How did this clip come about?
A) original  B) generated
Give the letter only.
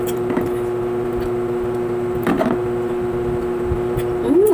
A